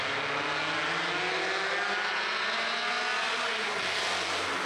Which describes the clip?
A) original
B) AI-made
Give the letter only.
A